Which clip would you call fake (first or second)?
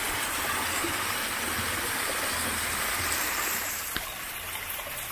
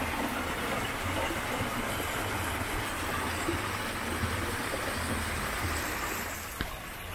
first